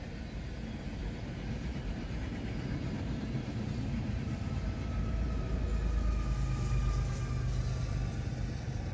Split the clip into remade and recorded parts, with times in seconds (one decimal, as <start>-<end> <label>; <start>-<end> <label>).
0.0-1.0 recorded; 1.0-5.6 remade; 5.6-8.9 recorded